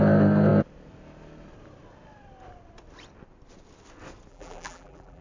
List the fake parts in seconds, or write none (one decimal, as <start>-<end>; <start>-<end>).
4.3-5.2